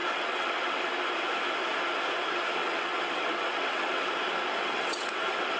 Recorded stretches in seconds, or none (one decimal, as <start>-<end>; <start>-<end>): 0.9-2.6; 4.0-4.6